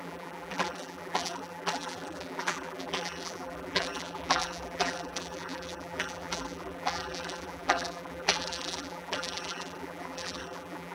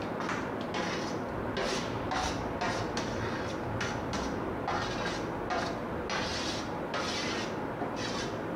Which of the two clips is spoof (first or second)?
first